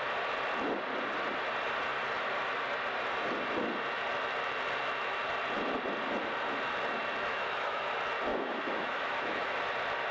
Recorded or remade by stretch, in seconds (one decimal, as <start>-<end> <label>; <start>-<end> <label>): 0.0-7.3 recorded; 7.3-7.8 remade; 7.8-8.3 recorded; 8.3-9.6 remade; 9.6-10.1 recorded